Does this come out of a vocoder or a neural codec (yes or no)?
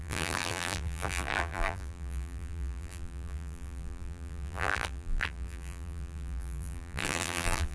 yes